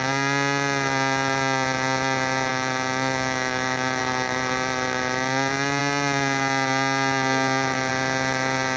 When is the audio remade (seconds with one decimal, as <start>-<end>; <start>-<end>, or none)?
2.5-4.0

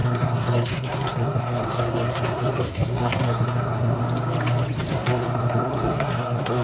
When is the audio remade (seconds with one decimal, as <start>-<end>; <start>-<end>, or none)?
0.0-4.0; 4.9-6.6

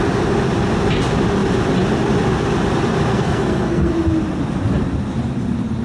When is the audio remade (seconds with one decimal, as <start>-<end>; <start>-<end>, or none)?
3.1-3.9

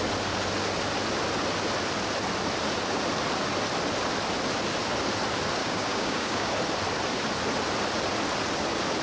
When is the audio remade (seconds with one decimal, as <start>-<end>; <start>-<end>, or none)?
5.6-6.5

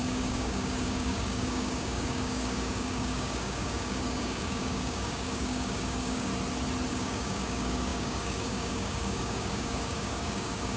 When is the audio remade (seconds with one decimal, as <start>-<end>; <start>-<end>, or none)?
0.0-6.3; 6.9-10.8

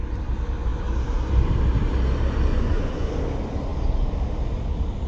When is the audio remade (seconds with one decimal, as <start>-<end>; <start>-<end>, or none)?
2.5-3.1